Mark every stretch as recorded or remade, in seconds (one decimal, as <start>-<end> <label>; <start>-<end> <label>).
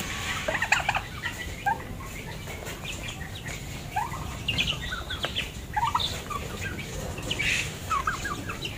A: 0.0-7.5 recorded; 7.5-8.0 remade; 8.0-8.8 recorded